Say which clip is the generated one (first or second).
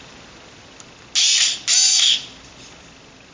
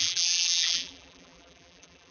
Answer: second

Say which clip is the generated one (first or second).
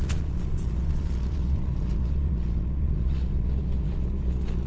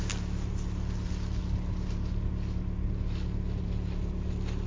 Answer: first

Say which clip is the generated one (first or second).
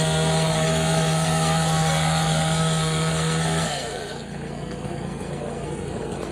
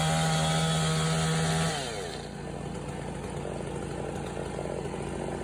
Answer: first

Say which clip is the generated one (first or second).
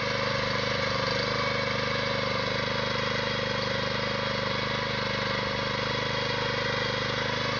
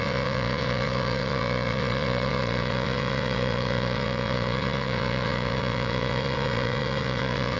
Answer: second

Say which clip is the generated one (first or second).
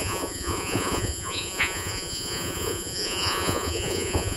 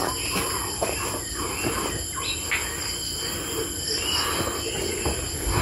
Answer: first